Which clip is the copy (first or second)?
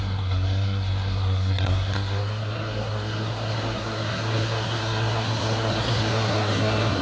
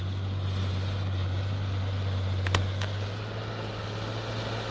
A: first